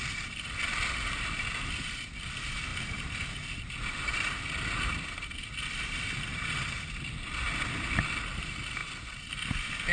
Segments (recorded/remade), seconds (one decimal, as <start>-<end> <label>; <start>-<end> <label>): 0.0-9.9 recorded